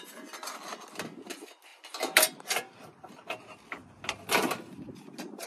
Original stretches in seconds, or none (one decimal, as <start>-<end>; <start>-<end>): 0.0-5.5